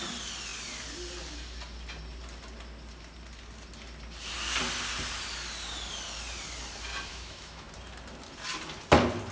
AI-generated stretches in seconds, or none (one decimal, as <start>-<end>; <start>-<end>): 7.1-7.7